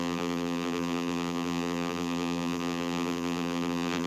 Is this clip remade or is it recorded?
remade